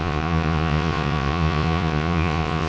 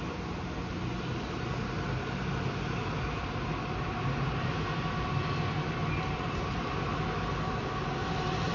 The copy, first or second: first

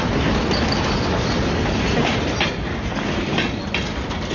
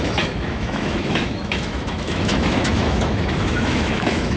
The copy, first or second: second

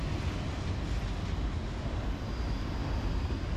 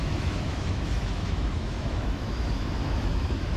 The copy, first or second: second